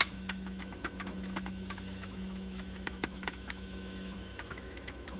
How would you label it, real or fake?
fake